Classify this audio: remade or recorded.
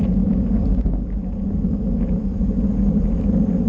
recorded